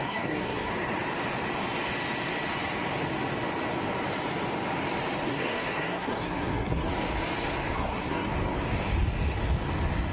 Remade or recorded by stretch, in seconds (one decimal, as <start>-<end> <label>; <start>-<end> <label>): 0.0-0.7 remade; 0.7-5.3 recorded; 5.3-6.9 remade; 6.9-7.7 recorded; 7.7-8.3 remade; 8.3-10.1 recorded